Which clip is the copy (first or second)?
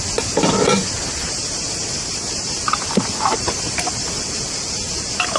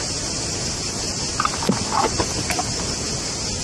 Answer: first